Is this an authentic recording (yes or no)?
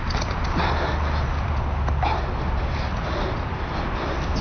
yes